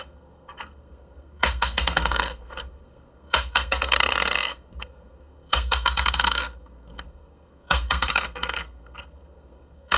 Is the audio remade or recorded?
remade